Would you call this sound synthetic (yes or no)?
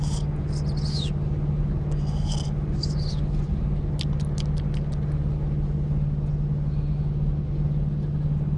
no